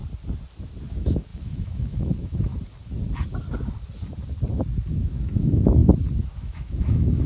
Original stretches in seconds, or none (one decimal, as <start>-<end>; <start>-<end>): 0.0-0.9; 2.5-4.9; 5.8-6.4